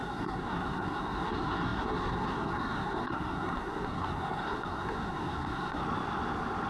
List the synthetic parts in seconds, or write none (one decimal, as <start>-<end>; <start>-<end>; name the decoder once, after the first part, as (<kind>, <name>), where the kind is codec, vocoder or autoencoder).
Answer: 0.0-5.8 (codec, SNAC)